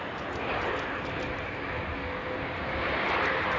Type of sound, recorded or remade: recorded